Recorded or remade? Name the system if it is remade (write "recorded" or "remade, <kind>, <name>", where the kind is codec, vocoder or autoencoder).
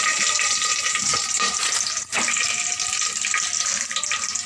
recorded